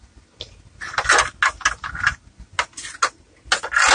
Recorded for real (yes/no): yes